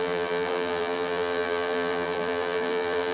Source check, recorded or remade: remade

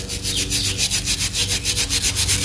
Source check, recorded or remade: recorded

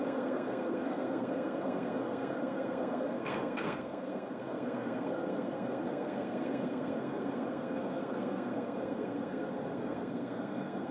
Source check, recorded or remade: remade